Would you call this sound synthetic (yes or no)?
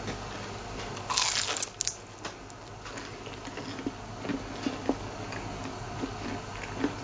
no